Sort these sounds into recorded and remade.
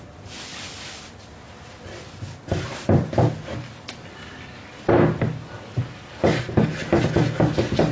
recorded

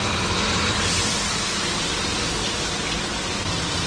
recorded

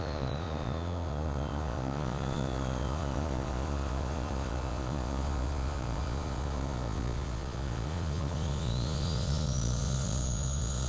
remade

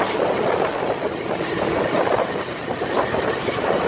recorded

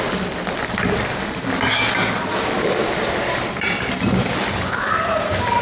recorded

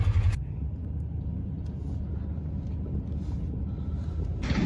recorded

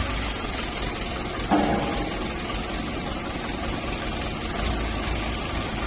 recorded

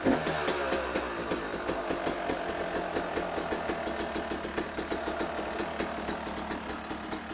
recorded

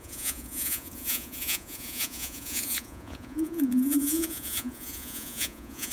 remade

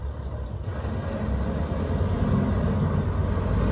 recorded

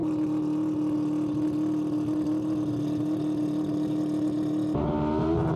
recorded